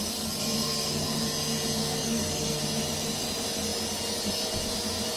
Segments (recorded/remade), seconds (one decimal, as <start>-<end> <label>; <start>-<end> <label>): 0.0-0.6 recorded; 0.6-1.2 remade; 1.2-1.8 recorded; 1.8-2.6 remade; 2.6-5.2 recorded